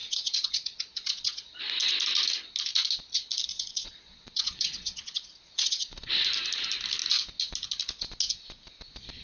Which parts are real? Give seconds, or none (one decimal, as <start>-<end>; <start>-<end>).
1.6-3.5; 6.1-9.2